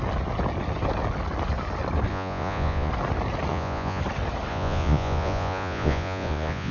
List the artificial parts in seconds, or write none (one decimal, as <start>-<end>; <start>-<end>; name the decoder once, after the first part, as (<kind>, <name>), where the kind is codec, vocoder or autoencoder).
2.1-2.9 (vocoder, Vocos); 3.5-4.0; 4.5-6.7